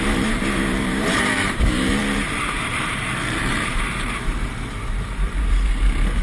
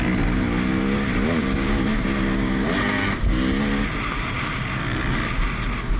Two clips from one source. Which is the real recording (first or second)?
second